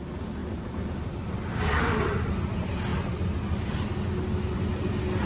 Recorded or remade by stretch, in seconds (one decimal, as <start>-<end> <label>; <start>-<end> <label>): 0.0-0.4 recorded; 0.4-2.4 remade; 2.4-5.3 recorded